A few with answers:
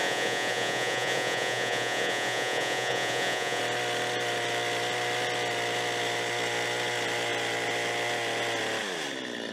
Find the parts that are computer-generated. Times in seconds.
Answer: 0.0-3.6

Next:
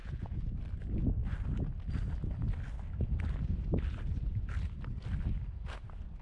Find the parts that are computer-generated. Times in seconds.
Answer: 0.0-0.6

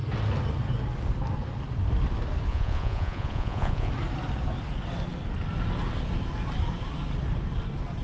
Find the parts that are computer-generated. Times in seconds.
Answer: 2.5-3.9